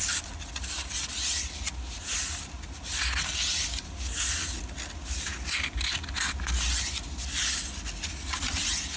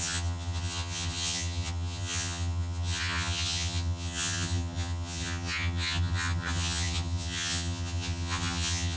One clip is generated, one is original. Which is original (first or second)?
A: first